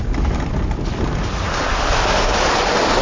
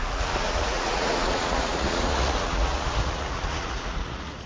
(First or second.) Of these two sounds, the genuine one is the first